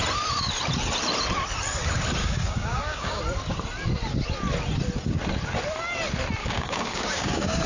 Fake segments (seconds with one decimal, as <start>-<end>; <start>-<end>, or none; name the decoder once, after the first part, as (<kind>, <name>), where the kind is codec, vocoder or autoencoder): 2.2-3.2 (codec, DAC); 6.4-7.7